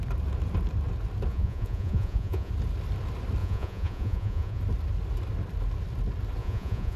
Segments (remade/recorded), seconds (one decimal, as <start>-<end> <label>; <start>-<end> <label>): 0.0-1.3 recorded; 1.3-2.5 remade; 2.5-3.4 recorded; 3.4-4.6 remade; 4.6-6.4 recorded; 6.4-7.0 remade